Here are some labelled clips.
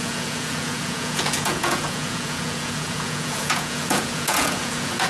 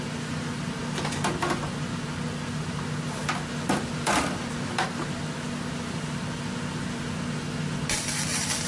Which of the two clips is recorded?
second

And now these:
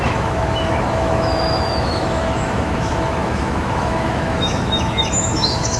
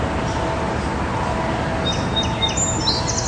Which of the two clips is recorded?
second